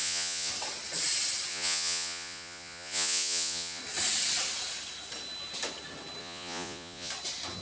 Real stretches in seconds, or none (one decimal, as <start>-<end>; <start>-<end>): 0.5-1.5; 3.8-6.2; 7.1-7.6